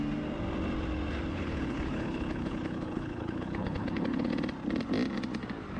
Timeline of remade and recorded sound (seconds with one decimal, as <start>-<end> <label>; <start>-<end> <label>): 0.0-1.3 recorded; 1.3-4.3 remade; 4.3-5.8 recorded